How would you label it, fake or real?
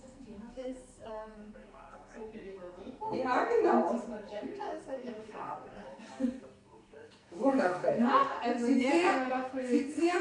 fake